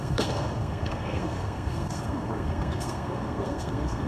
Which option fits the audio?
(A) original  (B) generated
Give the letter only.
B